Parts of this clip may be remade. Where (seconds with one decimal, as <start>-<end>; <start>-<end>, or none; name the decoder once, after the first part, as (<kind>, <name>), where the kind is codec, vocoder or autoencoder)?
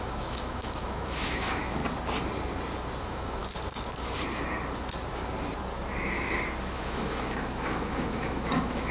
0.0-1.8 (autoencoder, DAC-VAE); 3.0-3.4; 6.7-8.9